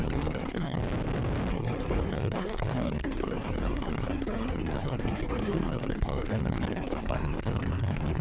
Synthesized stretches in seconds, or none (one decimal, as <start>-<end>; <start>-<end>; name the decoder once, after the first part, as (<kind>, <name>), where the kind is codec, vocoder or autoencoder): 0.0-0.8 (codec, SNAC); 1.5-8.2